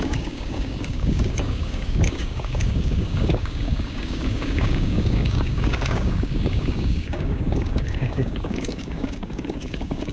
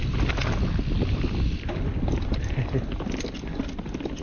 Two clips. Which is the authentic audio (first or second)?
second